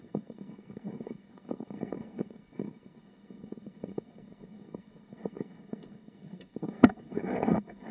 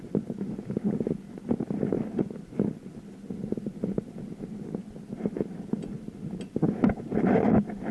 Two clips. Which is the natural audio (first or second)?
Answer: second